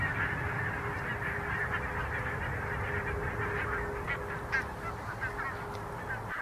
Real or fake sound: real